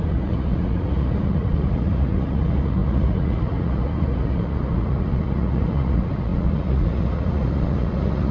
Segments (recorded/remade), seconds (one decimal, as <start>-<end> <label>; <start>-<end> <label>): 0.0-8.3 remade

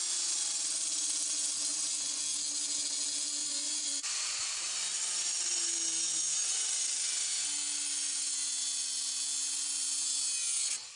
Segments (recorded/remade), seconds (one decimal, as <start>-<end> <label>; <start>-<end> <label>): 0.0-1.7 recorded; 1.7-2.2 remade; 2.2-3.4 recorded; 3.4-4.5 remade; 4.5-11.0 recorded

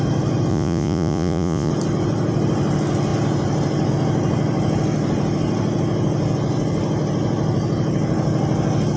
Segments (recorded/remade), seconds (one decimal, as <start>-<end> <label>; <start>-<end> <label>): 0.0-0.5 recorded; 0.5-1.7 remade; 1.7-9.0 recorded

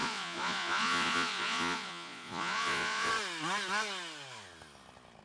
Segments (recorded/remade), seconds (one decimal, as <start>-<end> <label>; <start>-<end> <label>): 0.0-3.1 remade; 3.1-5.2 recorded

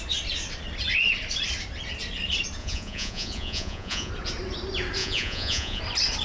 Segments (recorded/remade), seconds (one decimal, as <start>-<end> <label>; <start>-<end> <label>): 0.0-2.6 recorded; 2.6-4.1 remade; 4.1-5.0 recorded; 5.0-5.8 remade; 5.8-6.2 recorded

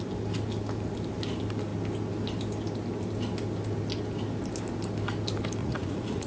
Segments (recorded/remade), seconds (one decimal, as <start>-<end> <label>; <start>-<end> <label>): 0.0-5.6 recorded; 5.6-6.3 remade